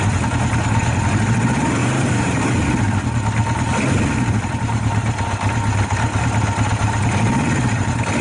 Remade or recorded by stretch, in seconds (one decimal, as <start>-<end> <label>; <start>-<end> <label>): 0.0-1.8 recorded; 1.8-2.4 remade; 2.4-8.2 recorded